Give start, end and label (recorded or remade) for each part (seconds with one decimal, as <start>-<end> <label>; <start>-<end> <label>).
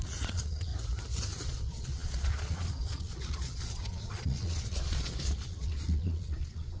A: 0.0-0.7 remade; 0.7-1.3 recorded; 1.3-6.8 remade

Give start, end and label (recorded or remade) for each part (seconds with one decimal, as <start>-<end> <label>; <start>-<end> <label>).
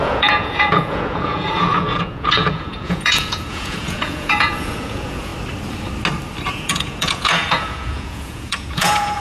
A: 0.0-5.3 remade; 5.3-6.5 recorded; 6.5-9.2 remade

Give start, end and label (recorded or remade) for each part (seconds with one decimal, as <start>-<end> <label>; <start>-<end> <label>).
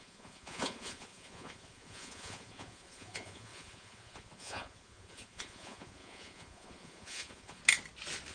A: 0.0-7.6 remade; 7.6-8.3 recorded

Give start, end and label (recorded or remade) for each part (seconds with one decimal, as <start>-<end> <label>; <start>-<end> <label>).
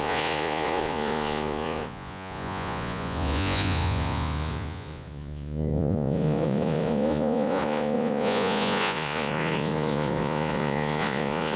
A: 0.0-11.6 remade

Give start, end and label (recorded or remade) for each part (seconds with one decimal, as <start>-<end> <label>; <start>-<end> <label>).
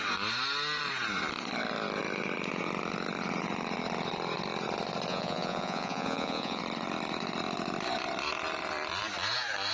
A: 0.0-5.1 recorded; 5.1-6.6 remade; 6.6-9.7 recorded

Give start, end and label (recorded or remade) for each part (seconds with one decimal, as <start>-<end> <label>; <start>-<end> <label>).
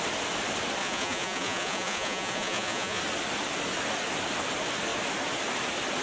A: 0.0-0.8 recorded; 0.8-3.0 remade; 3.0-6.0 recorded